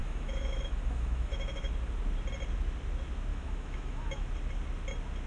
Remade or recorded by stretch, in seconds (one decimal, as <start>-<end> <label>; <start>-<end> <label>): 0.0-1.7 remade; 1.7-3.3 recorded; 3.3-4.3 remade; 4.3-5.3 recorded